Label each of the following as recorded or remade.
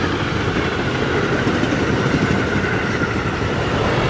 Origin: recorded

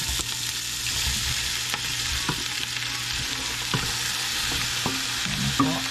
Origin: recorded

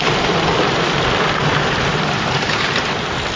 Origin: remade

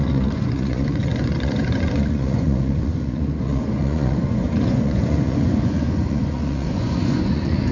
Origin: remade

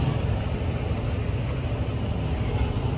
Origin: recorded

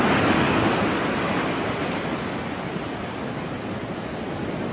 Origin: recorded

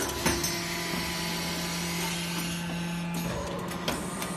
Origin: recorded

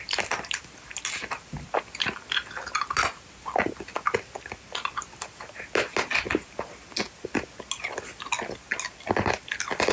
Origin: recorded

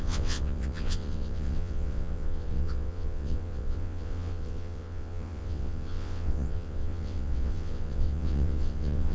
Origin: remade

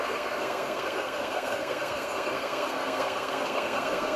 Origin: remade